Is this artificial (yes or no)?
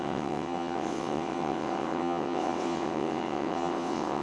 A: yes